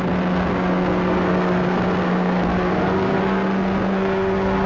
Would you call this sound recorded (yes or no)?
no